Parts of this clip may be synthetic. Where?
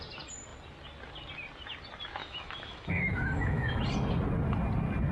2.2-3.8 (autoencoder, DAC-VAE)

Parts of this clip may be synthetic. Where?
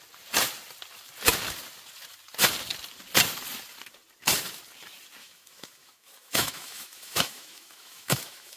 5.2-8.6 (autoencoder, DAC-VAE)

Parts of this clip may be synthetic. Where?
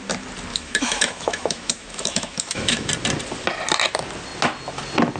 0.5-2.9 (autoencoder, DAC-VAE)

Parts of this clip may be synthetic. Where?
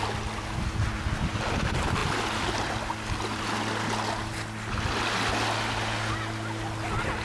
none